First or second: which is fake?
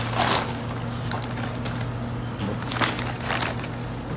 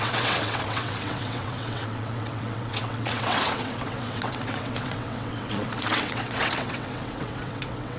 second